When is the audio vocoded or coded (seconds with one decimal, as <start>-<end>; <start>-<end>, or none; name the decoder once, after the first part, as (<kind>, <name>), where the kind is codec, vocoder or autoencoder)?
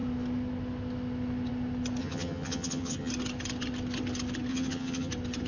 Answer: 2.0-3.1 (vocoder, HiFi-GAN); 4.5-5.1